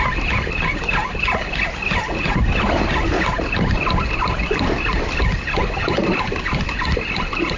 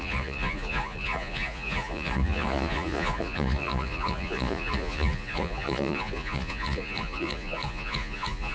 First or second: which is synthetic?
second